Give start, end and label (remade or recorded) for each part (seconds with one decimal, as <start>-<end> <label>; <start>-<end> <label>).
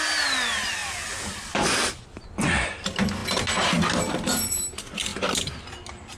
0.0-6.2 recorded